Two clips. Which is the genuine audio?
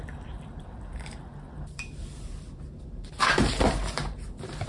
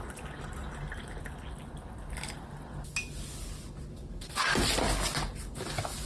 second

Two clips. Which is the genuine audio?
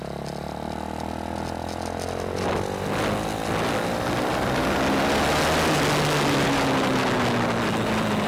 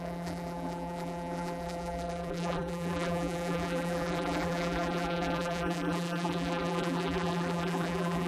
first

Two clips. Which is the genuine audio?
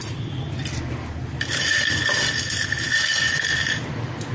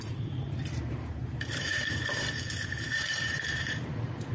first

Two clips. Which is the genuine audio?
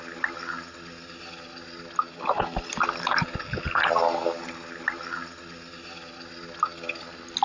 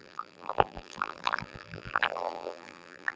first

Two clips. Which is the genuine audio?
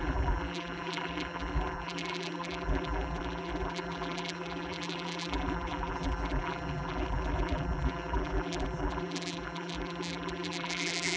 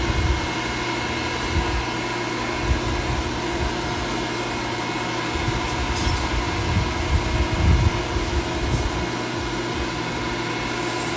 second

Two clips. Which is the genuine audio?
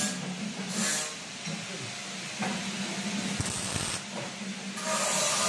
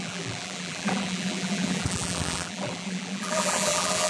first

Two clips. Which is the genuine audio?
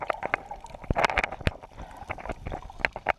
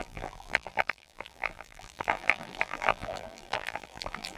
first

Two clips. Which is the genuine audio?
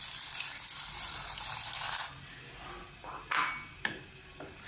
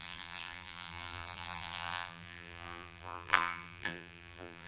first